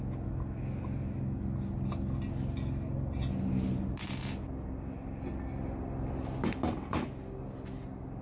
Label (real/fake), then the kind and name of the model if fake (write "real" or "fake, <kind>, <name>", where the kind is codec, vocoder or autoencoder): real